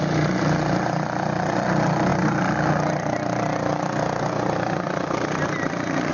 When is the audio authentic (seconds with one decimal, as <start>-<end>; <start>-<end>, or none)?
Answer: 0.0-6.1